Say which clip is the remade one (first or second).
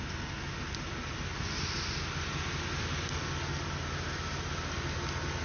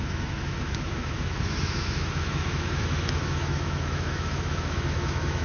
second